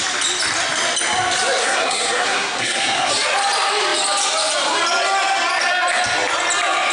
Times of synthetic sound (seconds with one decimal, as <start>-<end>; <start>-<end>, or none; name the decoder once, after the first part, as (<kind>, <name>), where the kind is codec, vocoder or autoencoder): 1.6-3.1 (codec, SNAC)